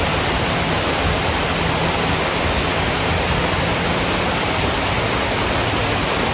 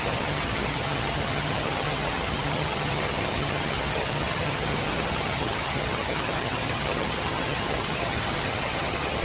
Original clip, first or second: first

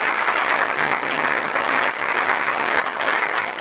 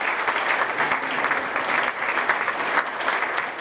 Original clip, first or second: second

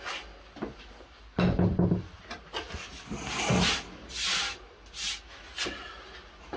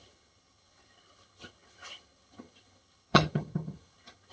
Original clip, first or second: first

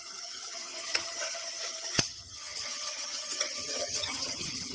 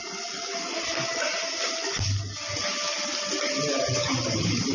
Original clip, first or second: second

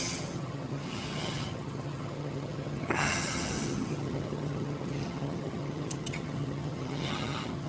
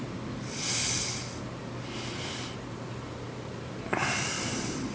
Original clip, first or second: second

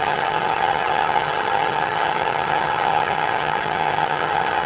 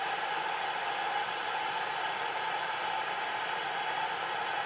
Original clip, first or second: second